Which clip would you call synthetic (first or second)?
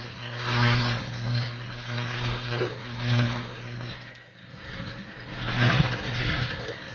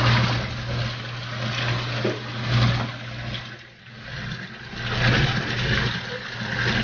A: first